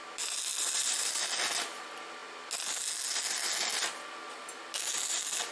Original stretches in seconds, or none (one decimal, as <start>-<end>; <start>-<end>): 0.0-0.5; 1.2-5.5